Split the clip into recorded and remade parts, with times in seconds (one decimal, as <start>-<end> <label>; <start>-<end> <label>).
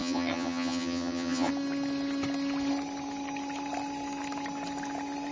0.0-1.5 remade; 1.5-5.3 recorded